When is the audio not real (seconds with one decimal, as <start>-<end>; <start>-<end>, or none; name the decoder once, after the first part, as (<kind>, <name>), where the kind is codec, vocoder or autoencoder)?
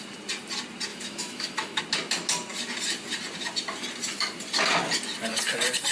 0.9-1.8 (autoencoder, DAC-VAE)